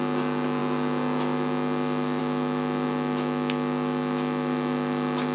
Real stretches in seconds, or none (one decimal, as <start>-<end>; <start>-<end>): 0.0-5.3